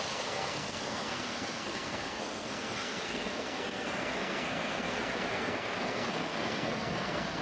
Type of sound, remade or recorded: remade